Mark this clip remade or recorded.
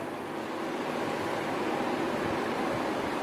recorded